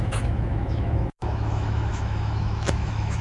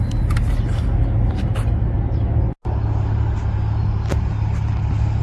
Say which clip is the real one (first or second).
second